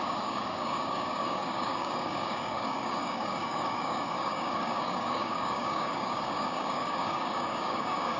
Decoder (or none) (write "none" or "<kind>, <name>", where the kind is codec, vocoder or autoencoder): codec, DAC